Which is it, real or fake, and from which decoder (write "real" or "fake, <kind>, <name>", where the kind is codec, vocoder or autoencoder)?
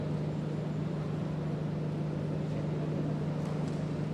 real